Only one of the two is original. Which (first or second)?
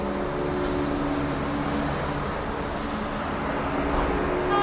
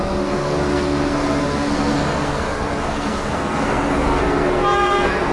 first